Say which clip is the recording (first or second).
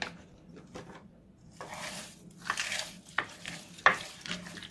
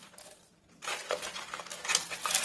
second